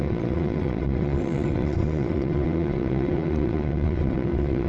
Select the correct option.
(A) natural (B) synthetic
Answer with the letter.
B